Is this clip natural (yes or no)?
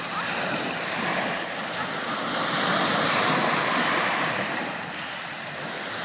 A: no